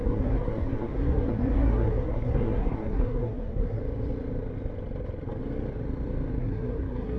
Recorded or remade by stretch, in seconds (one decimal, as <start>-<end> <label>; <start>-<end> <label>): 0.0-3.8 remade; 3.8-6.4 recorded; 6.4-7.2 remade